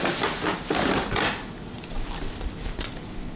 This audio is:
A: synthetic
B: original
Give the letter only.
B